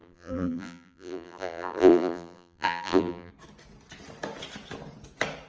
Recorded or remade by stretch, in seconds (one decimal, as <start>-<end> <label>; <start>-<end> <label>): 0.0-3.3 remade; 3.3-5.5 recorded